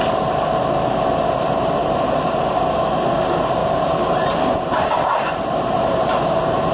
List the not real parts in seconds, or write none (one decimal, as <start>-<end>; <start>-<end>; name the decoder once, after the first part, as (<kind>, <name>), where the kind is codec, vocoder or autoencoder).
1.8-2.4 (vocoder, BigVGAN v2); 3.6-6.7

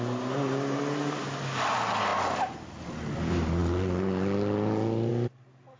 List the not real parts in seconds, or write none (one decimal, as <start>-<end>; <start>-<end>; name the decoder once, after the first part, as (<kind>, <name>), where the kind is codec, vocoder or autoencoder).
none

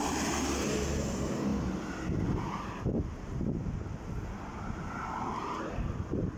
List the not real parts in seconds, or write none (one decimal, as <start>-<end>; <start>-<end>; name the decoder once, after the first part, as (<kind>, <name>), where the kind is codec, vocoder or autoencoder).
0.0-1.5 (vocoder, BigVGAN v2); 4.9-6.4

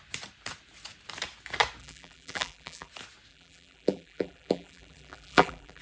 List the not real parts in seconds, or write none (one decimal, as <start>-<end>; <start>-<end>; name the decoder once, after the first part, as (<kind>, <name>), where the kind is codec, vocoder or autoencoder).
1.8-2.9 (vocoder, BigVGAN v2); 3.3-5.8